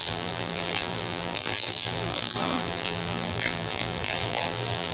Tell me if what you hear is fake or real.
fake